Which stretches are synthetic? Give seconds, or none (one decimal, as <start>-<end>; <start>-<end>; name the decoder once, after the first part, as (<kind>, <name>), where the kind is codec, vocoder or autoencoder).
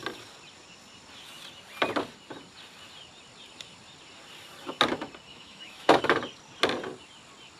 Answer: 5.3-6.0 (autoencoder, DAC-VAE)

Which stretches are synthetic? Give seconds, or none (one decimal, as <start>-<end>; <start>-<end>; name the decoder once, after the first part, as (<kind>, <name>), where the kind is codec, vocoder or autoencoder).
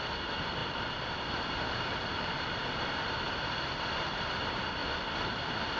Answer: 0.0-4.8 (vocoder, BigVGAN v2)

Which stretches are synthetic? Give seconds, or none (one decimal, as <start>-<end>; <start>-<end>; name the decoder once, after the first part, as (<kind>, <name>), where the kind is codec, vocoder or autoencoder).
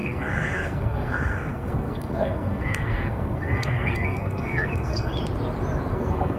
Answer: 0.0-5.1 (codec, SNAC); 5.9-6.4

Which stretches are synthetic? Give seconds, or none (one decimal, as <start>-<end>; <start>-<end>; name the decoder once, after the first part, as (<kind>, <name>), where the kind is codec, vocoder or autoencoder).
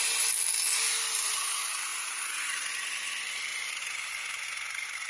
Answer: 1.9-3.0 (vocoder, BigVGAN v2); 3.5-5.1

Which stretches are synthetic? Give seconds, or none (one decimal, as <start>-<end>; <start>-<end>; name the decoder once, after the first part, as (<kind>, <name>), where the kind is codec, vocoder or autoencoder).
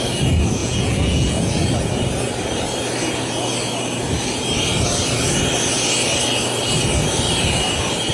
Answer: 0.6-1.5 (vocoder, Vocos)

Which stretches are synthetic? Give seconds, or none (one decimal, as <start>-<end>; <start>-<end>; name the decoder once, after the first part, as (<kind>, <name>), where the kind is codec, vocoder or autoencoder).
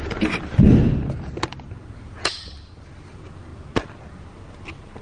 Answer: none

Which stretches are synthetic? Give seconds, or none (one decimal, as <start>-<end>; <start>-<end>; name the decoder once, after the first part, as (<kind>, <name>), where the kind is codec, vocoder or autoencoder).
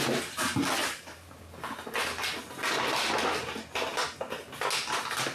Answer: 0.8-1.4 (vocoder, BigVGAN v2)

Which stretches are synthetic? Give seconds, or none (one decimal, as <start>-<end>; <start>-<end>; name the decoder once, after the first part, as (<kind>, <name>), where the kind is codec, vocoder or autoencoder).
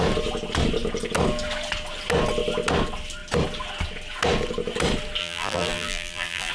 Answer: 5.2-6.5 (vocoder, BigVGAN v2)